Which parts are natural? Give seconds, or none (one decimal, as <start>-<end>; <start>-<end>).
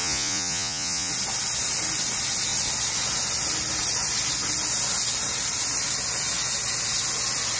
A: 1.1-7.6